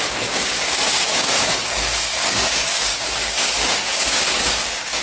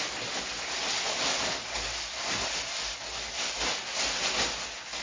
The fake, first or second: first